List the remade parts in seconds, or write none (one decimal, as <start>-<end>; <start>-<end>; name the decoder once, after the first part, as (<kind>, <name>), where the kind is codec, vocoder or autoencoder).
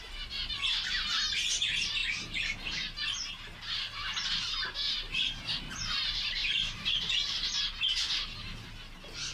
6.4-6.9 (vocoder, BigVGAN v2)